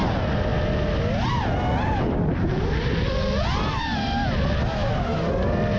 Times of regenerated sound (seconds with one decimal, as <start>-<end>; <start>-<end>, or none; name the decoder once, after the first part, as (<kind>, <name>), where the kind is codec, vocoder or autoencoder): none